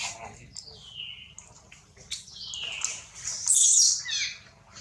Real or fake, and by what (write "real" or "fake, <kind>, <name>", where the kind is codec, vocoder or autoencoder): real